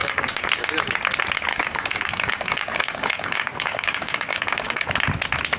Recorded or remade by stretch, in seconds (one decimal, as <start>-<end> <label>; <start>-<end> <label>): 0.0-0.5 remade; 0.5-1.5 recorded; 1.5-4.9 remade; 4.9-5.6 recorded